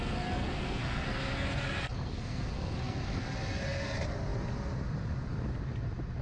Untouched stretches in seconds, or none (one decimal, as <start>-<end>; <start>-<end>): 3.2-6.2